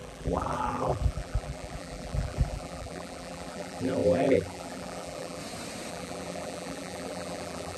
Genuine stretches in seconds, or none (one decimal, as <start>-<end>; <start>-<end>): 5.4-5.9